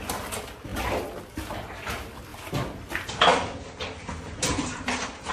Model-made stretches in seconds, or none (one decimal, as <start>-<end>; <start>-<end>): 2.3-2.8

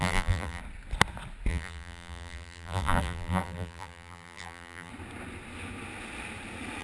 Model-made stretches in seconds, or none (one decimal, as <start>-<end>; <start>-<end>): 0.0-0.6; 1.5-4.9